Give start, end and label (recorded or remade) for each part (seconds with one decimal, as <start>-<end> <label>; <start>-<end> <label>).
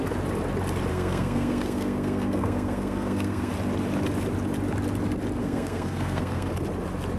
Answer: 0.0-0.9 recorded; 0.9-3.5 remade; 3.5-5.4 recorded; 5.4-6.5 remade; 6.5-7.2 recorded